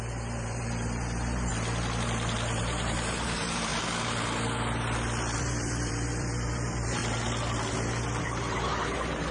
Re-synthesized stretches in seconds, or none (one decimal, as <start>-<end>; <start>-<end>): 0.0-1.5; 2.6-3.7; 5.4-7.0; 8.2-9.3